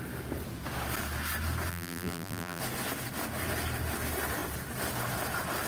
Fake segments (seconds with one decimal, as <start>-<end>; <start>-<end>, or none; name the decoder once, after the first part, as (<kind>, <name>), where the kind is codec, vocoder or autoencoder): 1.7-2.6 (vocoder, BigVGAN v2)